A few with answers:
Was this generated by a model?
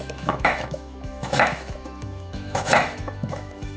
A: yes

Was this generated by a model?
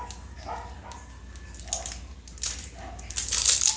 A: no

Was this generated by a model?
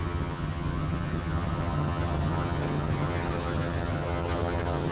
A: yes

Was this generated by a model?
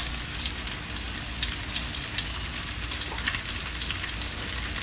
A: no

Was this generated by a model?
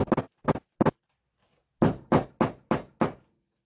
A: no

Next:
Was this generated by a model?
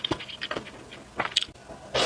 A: no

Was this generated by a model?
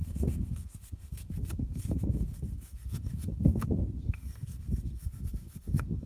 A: yes